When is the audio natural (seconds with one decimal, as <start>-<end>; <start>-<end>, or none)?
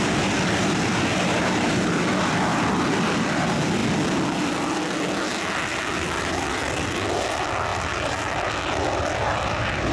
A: 0.0-7.7; 8.4-9.9